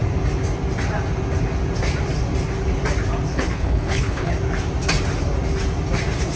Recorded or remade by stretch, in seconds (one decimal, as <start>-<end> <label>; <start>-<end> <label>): 0.0-3.3 recorded; 3.3-4.3 remade; 4.3-6.4 recorded